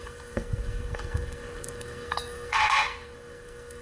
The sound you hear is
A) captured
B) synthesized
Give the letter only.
B